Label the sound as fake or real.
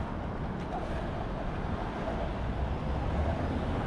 real